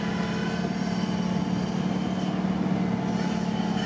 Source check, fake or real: real